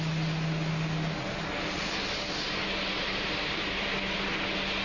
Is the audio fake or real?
real